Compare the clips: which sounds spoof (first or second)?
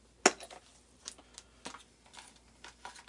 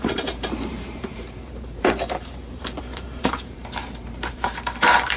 second